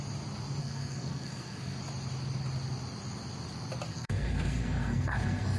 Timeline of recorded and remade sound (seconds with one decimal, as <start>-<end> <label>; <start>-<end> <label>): 0.0-0.6 recorded; 0.6-1.8 remade; 1.8-3.9 recorded; 3.9-5.6 remade